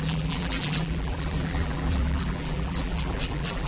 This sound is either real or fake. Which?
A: fake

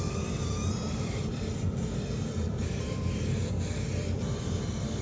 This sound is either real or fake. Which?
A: fake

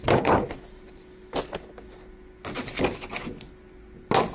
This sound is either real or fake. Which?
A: real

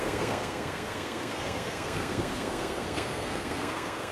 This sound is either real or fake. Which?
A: fake